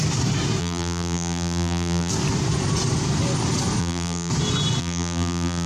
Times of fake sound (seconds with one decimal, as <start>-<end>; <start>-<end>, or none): 0.6-2.1; 3.8-4.3; 4.8-5.7